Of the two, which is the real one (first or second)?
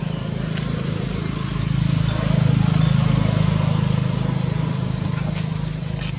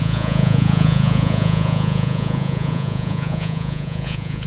first